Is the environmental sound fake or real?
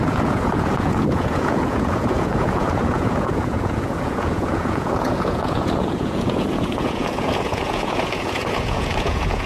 fake